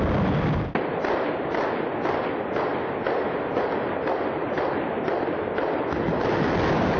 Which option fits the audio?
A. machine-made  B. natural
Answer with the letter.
B